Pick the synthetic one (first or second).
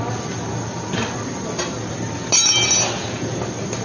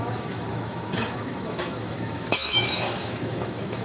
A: second